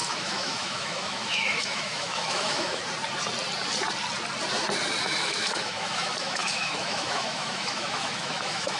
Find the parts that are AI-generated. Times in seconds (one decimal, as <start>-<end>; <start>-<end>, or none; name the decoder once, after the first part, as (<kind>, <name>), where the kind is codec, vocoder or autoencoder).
0.0-2.8 (autoencoder, DAC-VAE); 5.0-8.8